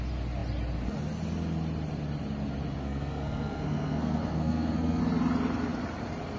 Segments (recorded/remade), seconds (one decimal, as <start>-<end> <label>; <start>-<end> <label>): 0.0-2.8 recorded; 2.8-5.0 remade; 5.0-6.4 recorded